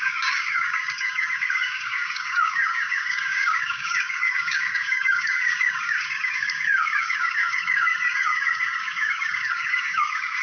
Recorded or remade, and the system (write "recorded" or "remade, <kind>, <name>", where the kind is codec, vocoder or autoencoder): remade, codec, DAC